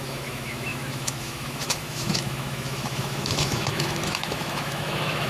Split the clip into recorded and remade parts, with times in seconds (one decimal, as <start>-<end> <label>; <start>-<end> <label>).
0.0-5.3 remade